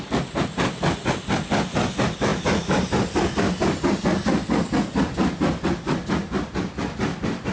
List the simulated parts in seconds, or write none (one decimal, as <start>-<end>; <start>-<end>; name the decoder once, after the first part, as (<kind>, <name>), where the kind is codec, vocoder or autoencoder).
none